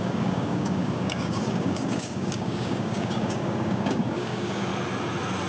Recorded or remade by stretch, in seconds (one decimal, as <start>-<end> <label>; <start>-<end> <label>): 0.0-4.7 remade; 4.7-5.5 recorded